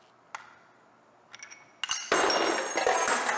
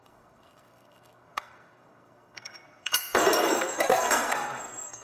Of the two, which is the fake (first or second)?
second